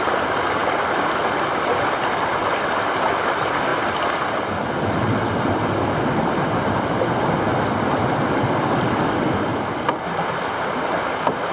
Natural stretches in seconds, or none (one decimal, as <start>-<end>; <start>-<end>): 0.0-9.5; 10.4-11.5